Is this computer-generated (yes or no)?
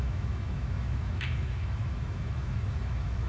yes